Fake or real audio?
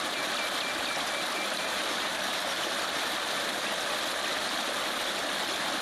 real